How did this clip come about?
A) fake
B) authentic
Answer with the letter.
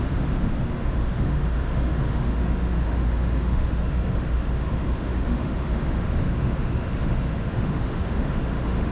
A